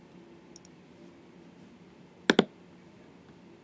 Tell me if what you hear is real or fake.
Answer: real